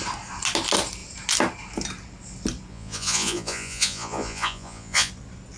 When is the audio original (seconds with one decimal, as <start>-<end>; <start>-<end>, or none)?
0.0-2.7; 5.1-5.6